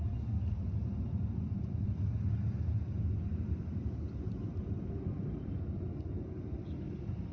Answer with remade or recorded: recorded